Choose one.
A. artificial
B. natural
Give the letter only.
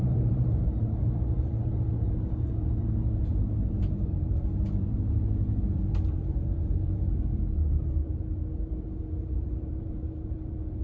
A